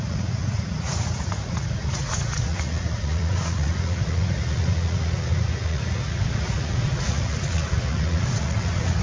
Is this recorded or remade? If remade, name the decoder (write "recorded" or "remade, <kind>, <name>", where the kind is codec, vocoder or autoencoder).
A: remade, vocoder, Vocos